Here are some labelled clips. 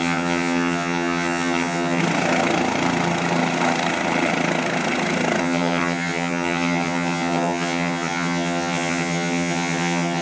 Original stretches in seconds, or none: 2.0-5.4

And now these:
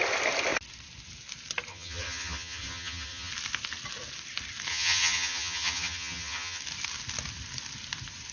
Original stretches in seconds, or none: 0.0-1.7; 3.3-4.7; 6.6-8.3

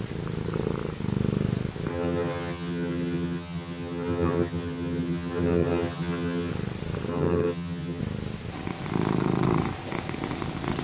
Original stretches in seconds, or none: 0.0-1.9; 6.5-7.1; 8.0-10.8

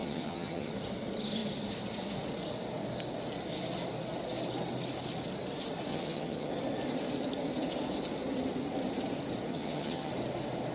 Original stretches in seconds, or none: 0.7-5.9; 6.5-9.5; 10.1-10.7

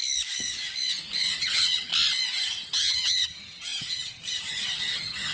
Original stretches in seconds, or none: 0.0-1.4; 1.9-2.4

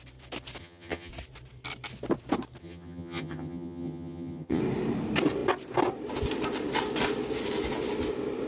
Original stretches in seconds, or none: 0.0-0.6; 1.1-2.6; 4.6-8.5

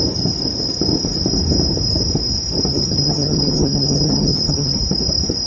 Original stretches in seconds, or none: 0.0-2.7; 4.8-5.5